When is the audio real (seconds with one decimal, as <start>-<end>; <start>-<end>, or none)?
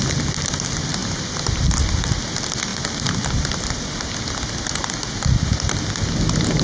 0.0-1.0; 1.6-6.6